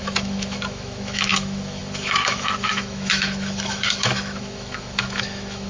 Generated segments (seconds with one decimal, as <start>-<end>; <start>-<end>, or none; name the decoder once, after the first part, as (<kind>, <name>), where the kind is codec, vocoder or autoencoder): 0.0-5.7 (autoencoder, DAC-VAE)